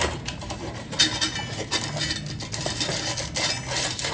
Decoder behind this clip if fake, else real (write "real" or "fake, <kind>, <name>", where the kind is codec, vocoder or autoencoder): real